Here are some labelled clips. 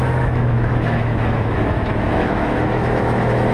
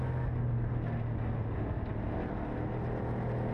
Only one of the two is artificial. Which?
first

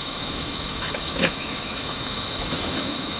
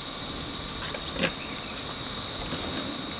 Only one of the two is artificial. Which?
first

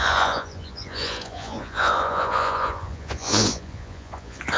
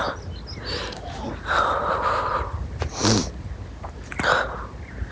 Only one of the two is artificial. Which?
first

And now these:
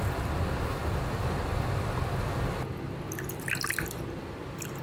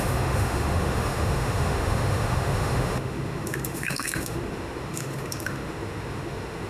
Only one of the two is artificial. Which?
second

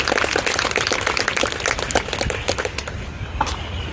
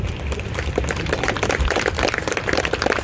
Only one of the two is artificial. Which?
second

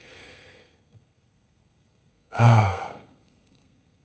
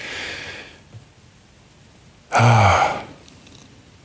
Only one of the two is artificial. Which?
first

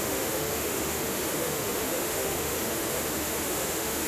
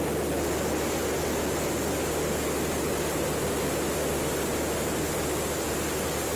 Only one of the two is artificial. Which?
first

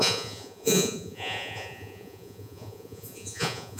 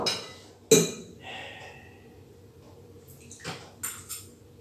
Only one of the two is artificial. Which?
first